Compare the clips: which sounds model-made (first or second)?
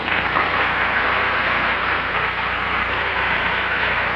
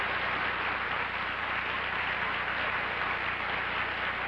first